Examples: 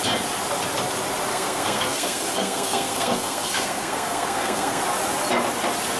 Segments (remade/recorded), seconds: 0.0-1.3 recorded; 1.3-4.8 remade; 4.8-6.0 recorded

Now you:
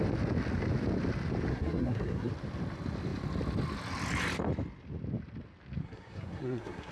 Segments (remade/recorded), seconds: 0.0-1.5 recorded; 1.5-2.3 remade; 2.3-5.8 recorded; 5.8-6.9 remade

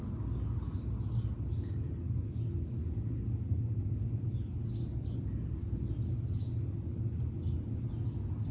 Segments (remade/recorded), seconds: 0.0-8.5 recorded

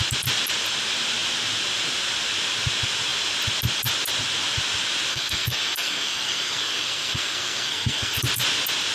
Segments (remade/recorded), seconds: 0.0-5.1 recorded; 5.1-8.2 remade; 8.2-8.9 recorded